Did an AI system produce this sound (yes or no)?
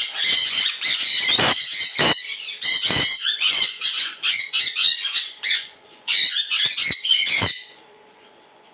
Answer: yes